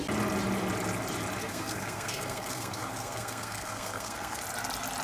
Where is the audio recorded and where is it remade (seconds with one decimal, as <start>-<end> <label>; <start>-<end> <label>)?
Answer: 0.0-1.4 recorded; 1.4-4.4 remade; 4.4-5.0 recorded